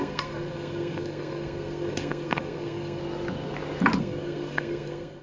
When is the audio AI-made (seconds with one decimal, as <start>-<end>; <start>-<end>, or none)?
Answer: 0.0-3.0; 4.0-5.2